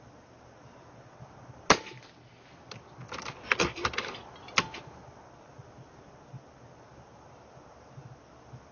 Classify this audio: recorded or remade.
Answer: recorded